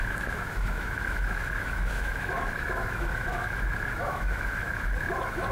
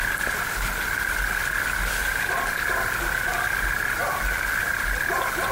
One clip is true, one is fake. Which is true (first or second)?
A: second